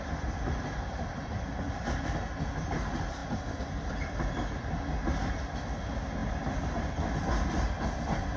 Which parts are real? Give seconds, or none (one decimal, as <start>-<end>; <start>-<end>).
0.0-8.4